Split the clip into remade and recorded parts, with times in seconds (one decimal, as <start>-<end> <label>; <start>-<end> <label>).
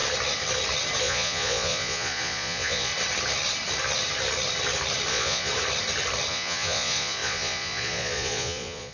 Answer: 0.0-1.0 recorded; 1.0-2.9 remade; 2.9-5.1 recorded; 5.1-5.5 remade; 5.5-6.3 recorded; 6.3-8.9 remade